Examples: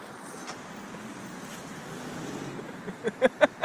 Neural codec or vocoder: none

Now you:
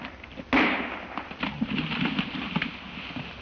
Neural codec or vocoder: none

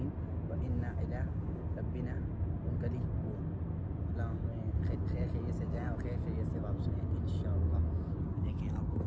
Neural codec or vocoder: none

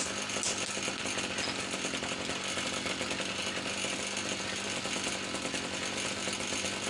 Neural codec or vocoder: none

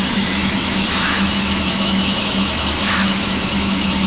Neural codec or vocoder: autoencoder, DAC-VAE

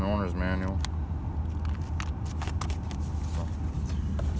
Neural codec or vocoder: none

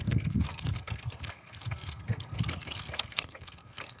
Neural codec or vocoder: codec, SNAC